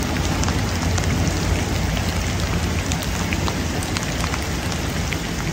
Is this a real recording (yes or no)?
yes